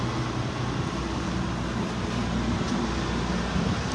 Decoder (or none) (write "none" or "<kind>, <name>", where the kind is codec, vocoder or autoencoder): none